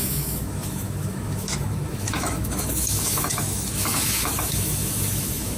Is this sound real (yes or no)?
no